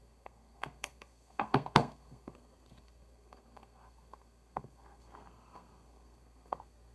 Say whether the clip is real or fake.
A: fake